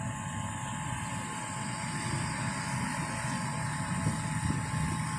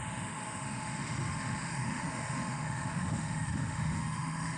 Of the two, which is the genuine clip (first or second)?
first